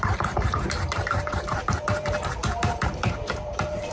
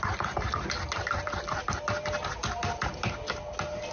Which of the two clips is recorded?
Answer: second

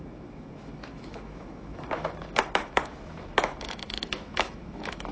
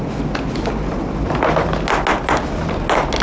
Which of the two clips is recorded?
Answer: second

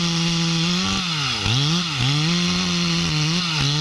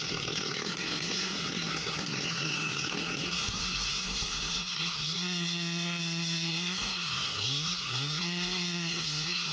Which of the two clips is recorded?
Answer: first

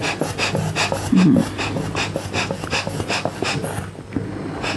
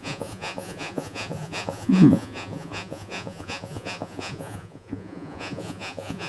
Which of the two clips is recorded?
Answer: first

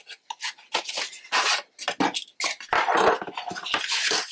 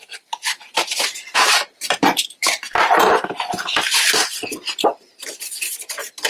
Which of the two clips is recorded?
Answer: first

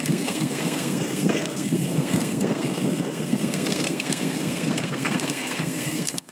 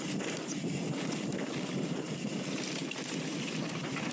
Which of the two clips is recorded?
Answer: second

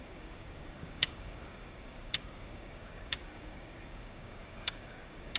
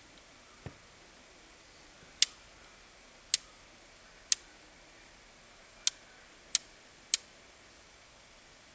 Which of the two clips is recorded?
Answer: second